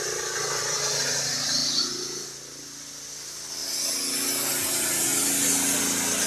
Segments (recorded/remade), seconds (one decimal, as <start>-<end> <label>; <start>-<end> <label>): 0.0-6.3 recorded